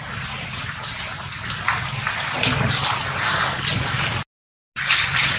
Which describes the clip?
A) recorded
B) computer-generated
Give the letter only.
A